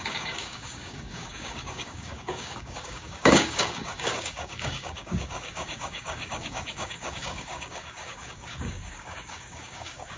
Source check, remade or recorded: remade